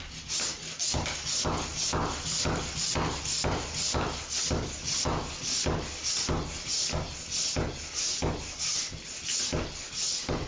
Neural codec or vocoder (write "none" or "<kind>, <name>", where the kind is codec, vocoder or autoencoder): none